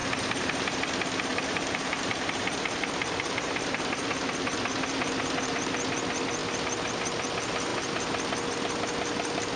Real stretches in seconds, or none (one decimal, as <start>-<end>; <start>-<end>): 0.8-1.3; 5.9-9.6